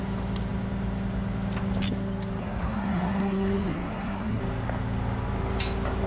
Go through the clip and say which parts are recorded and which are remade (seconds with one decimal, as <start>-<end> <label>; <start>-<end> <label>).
0.0-2.4 recorded; 2.4-4.4 remade; 4.4-6.1 recorded